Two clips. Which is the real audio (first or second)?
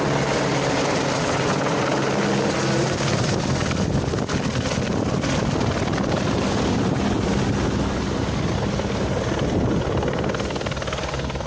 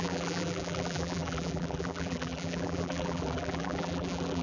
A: first